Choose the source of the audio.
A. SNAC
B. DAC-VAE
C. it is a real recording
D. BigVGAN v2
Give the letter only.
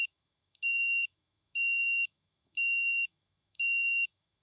B